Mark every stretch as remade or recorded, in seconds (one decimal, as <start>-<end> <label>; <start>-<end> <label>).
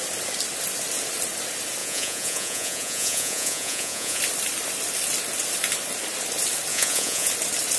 0.0-1.8 recorded; 1.8-4.2 remade; 4.2-6.7 recorded; 6.7-7.3 remade; 7.3-7.8 recorded